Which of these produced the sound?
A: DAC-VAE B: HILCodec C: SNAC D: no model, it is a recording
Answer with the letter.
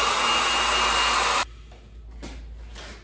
D